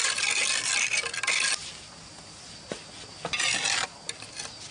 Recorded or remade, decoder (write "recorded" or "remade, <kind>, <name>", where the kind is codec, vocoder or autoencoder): recorded